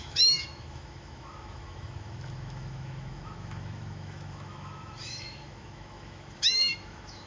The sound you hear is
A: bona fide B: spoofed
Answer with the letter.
B